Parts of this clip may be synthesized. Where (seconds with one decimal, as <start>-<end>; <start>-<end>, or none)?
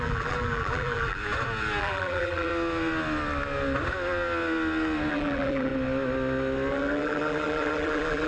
0.0-1.2; 1.8-2.5; 5.1-5.7; 6.7-8.3